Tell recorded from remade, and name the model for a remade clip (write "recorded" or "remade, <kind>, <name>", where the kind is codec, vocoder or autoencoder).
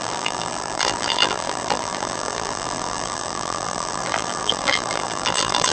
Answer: remade, vocoder, BigVGAN v2